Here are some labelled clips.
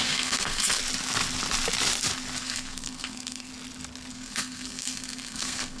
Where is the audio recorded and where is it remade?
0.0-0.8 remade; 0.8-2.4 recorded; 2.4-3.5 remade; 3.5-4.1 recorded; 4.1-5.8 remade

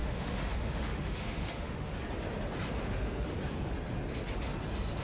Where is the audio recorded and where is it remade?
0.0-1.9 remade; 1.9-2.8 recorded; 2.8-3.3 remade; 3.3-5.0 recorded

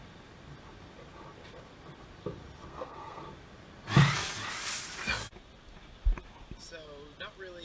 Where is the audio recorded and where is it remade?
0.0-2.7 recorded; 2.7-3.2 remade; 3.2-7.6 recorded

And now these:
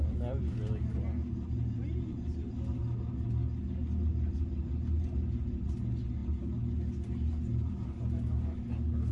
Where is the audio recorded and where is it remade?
0.0-9.1 recorded